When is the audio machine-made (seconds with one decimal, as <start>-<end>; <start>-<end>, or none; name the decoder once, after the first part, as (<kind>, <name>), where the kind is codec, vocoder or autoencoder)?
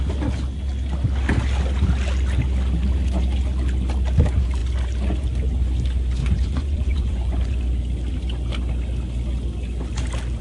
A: 6.2-7.6 (vocoder, Vocos)